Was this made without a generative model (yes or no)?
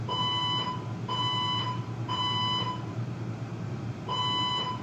no